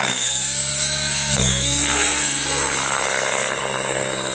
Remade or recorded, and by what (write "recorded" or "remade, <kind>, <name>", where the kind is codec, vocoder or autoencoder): remade, codec, SNAC